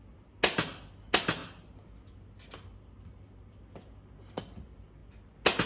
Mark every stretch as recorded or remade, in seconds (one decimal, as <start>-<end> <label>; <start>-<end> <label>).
0.0-5.7 recorded